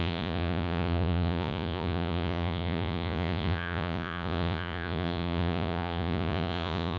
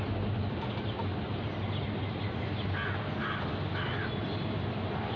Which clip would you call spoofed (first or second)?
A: first